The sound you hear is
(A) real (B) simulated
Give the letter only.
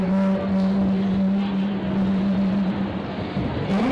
A